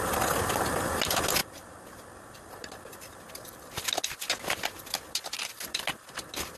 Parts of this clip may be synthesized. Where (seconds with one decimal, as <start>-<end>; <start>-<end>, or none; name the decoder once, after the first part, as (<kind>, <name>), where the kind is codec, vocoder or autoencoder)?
none